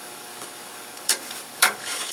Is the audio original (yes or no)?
no